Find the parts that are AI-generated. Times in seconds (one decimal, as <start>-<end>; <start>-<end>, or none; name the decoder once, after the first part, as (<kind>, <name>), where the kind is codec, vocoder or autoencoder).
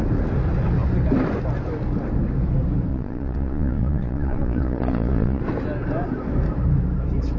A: 2.9-5.4 (vocoder, Vocos)